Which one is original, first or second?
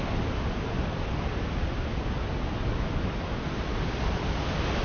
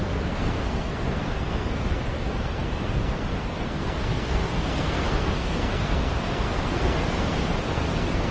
first